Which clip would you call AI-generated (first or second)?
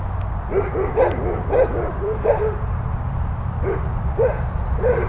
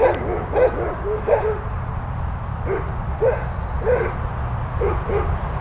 first